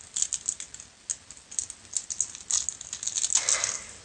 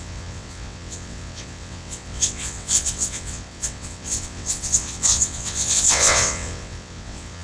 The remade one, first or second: second